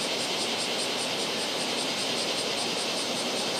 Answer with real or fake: fake